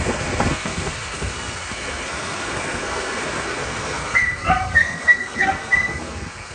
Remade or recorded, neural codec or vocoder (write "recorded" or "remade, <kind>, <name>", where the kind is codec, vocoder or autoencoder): remade, codec, SNAC